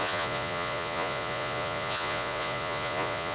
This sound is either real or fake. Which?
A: fake